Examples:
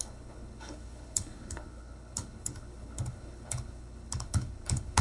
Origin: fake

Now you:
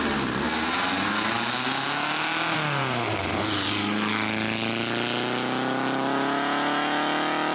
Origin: real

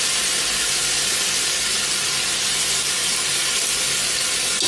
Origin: real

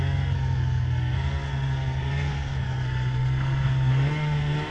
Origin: fake